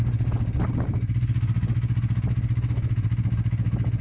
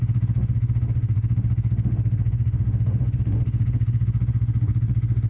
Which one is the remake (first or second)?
second